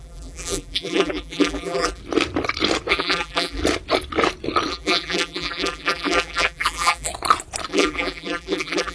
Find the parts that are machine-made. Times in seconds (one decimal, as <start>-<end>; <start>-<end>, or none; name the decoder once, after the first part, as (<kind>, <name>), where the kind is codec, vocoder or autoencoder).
0.0-2.0 (vocoder, BigVGAN v2); 2.9-3.6; 4.7-7.1; 7.7-8.9